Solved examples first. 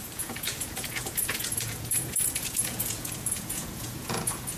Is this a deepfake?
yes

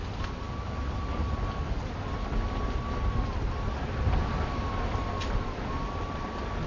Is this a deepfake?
no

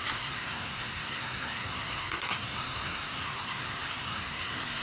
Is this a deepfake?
yes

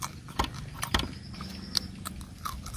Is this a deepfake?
no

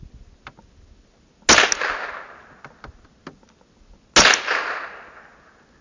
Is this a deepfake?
no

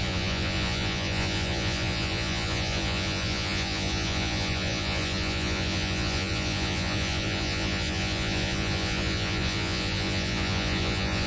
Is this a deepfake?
yes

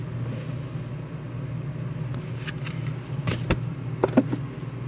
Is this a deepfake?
no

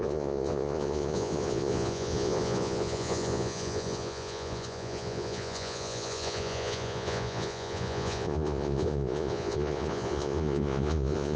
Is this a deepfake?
yes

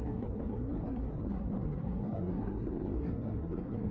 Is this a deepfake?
yes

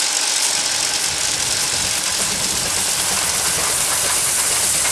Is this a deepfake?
no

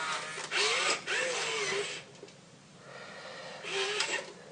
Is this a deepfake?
no